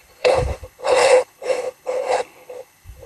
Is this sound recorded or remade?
remade